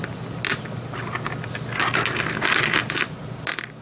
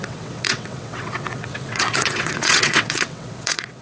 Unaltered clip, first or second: first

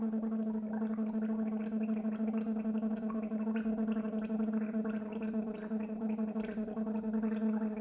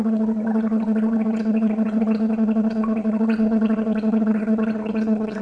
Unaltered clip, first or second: first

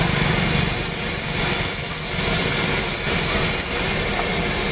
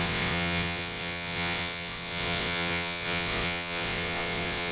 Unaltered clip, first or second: first